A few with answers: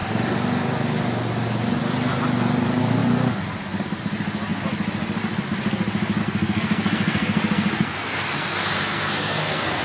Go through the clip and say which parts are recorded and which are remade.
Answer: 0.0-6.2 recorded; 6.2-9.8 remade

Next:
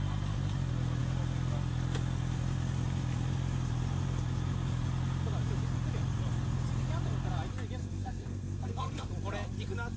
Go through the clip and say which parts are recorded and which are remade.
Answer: 0.0-7.8 recorded; 7.8-9.1 remade; 9.1-10.0 recorded

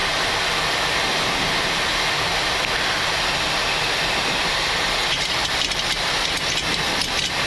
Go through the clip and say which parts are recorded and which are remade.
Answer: 0.0-7.5 recorded

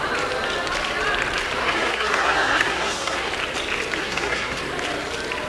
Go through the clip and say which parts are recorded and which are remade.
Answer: 0.0-1.6 recorded; 1.6-3.3 remade; 3.3-4.0 recorded; 4.0-4.6 remade; 4.6-5.5 recorded

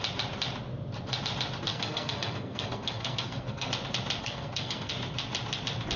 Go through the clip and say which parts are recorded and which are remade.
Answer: 0.0-1.7 recorded; 1.7-3.7 remade; 3.7-4.2 recorded; 4.2-4.9 remade; 4.9-6.0 recorded

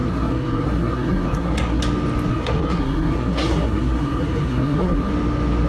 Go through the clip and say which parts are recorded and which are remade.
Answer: 0.0-1.8 remade; 1.8-2.3 recorded; 2.3-5.1 remade; 5.1-5.7 recorded